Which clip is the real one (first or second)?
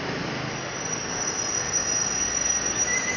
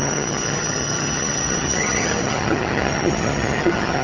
first